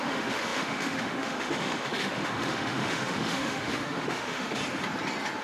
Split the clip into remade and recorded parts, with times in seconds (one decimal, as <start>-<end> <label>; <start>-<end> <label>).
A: 0.0-4.6 remade; 4.6-5.4 recorded